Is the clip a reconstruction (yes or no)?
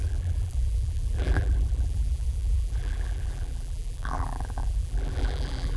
yes